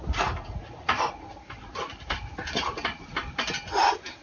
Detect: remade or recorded recorded